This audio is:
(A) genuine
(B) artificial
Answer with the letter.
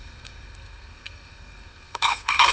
B